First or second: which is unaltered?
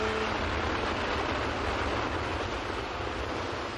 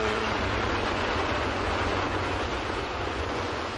first